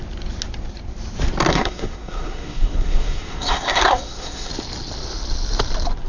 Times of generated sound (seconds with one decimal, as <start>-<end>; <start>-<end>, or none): 1.5-4.5